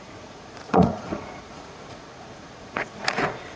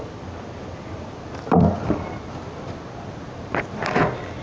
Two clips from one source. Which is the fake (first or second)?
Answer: first